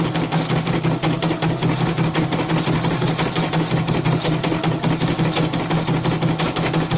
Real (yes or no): yes